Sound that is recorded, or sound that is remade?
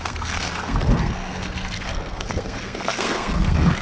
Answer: remade